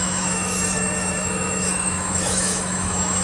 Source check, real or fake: fake